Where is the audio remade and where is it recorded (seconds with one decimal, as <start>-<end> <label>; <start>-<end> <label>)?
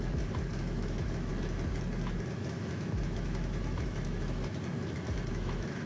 0.0-1.3 remade; 1.3-2.3 recorded; 2.3-4.4 remade; 4.4-5.3 recorded; 5.3-5.9 remade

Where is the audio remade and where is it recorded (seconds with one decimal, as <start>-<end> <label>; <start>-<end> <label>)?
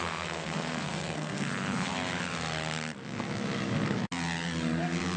0.0-1.9 remade; 1.9-5.2 recorded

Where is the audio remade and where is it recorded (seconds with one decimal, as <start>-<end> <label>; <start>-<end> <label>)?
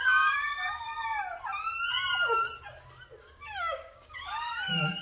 0.0-0.9 remade; 0.9-3.2 recorded; 3.2-5.0 remade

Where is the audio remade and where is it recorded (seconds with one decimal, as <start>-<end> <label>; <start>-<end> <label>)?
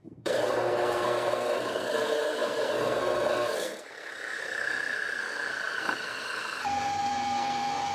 0.0-7.9 remade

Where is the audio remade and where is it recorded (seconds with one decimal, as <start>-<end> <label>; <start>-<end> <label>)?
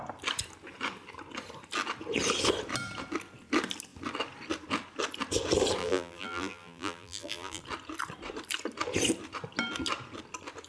0.0-5.8 recorded; 5.8-7.6 remade; 7.6-10.7 recorded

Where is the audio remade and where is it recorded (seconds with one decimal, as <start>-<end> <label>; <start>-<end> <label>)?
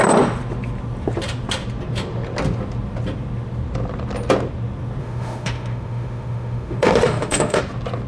0.0-5.0 recorded; 5.0-7.6 remade; 7.6-8.1 recorded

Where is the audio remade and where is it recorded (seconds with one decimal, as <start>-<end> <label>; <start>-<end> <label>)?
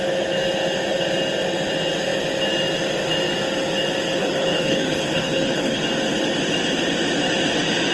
0.0-4.2 recorded; 4.2-5.8 remade; 5.8-7.9 recorded